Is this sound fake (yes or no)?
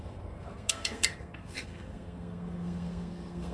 yes